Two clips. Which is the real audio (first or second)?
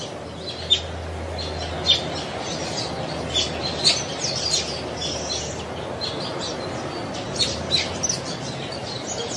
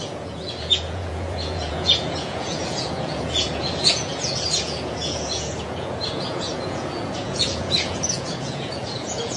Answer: first